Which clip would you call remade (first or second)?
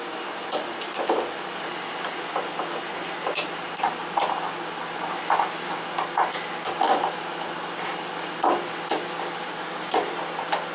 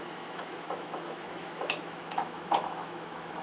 second